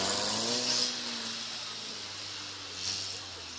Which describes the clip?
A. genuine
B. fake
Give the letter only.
A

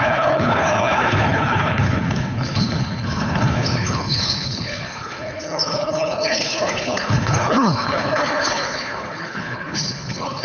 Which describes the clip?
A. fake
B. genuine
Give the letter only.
A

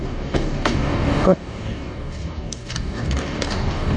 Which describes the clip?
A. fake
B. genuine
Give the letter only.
A